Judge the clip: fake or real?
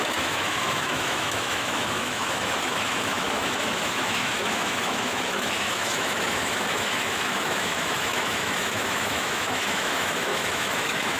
fake